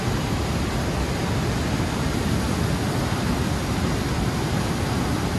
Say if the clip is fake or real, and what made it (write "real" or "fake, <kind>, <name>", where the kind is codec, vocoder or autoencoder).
real